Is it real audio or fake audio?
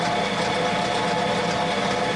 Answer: real